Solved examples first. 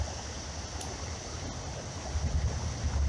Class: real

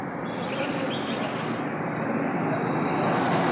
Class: real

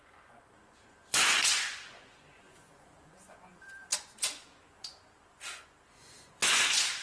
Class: fake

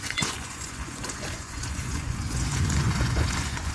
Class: fake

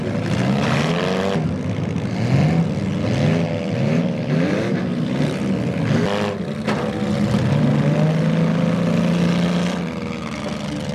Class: real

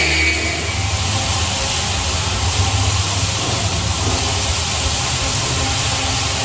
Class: real